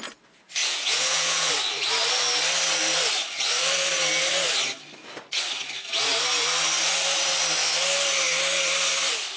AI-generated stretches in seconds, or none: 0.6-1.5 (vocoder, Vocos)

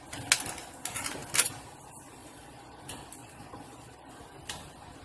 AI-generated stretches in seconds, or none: 2.2-2.8 (vocoder, Vocos); 3.2-4.1